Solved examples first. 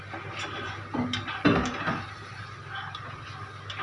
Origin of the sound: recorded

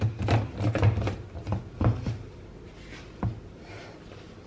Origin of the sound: recorded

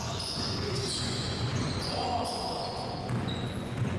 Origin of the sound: remade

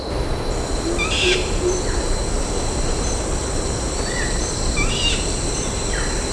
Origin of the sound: recorded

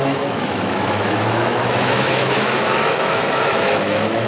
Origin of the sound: remade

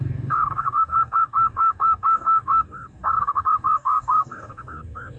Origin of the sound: remade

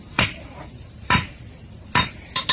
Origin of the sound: remade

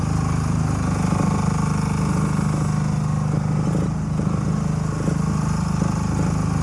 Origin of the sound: recorded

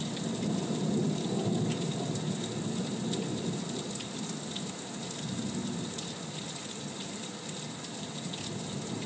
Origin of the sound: recorded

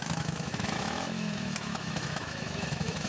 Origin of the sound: remade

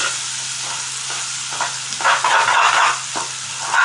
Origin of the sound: recorded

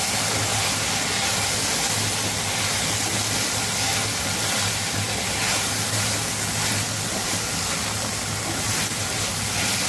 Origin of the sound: recorded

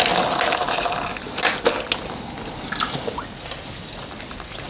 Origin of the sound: recorded